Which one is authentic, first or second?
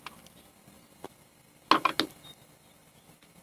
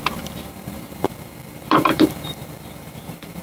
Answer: first